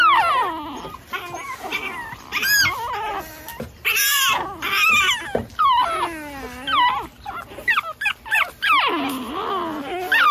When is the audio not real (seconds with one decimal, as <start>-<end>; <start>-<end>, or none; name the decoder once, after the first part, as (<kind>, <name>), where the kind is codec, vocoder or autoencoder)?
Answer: none

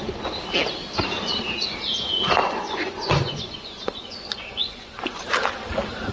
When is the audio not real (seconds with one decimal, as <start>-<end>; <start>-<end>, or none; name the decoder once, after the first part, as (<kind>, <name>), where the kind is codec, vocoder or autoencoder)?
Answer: 2.4-5.2 (vocoder, Vocos)

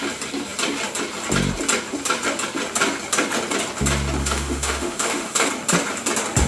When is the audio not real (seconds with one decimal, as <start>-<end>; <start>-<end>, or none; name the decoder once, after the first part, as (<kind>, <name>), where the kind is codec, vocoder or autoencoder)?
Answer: 4.2-5.5 (autoencoder, DAC-VAE)

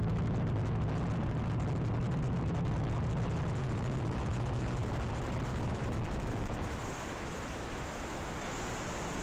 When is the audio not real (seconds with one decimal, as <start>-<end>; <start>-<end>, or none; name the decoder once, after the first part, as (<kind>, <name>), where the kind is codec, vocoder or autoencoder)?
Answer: 3.6-4.9 (autoencoder, DAC-VAE); 5.5-8.6

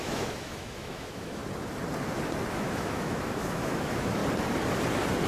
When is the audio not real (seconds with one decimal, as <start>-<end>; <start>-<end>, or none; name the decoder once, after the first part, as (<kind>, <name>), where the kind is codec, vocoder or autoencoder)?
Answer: 0.0-1.4 (autoencoder, DAC-VAE); 2.5-4.2

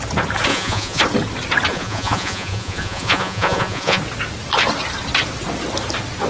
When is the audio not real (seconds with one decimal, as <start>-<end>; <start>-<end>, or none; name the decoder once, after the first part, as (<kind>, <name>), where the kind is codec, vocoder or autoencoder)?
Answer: 0.5-1.0 (vocoder, Vocos); 1.7-4.0

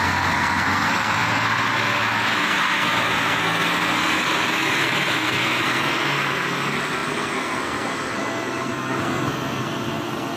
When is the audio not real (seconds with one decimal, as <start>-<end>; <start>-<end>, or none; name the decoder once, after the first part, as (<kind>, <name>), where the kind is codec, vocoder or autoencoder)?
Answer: 0.0-10.4 (codec, SNAC)

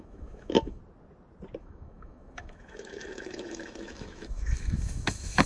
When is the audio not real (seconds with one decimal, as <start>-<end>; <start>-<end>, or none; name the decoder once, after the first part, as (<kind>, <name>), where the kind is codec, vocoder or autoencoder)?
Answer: 0.0-0.8 (autoencoder, DAC-VAE); 1.6-5.5